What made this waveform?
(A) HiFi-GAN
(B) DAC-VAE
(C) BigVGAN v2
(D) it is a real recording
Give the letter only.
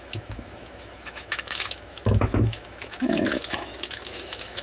B